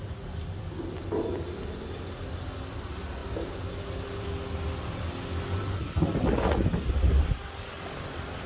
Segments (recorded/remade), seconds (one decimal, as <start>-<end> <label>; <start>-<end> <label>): 0.0-8.5 recorded